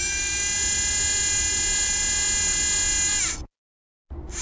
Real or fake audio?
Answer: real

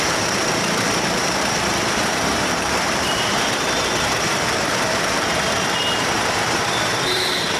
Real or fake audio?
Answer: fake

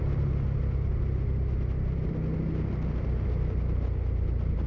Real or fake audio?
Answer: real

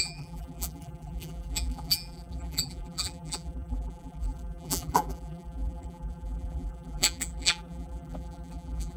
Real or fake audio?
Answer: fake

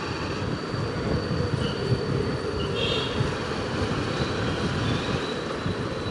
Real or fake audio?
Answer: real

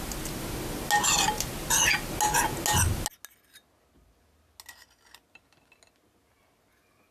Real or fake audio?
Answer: real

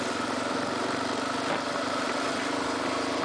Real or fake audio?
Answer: real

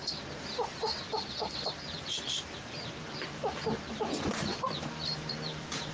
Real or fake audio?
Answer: fake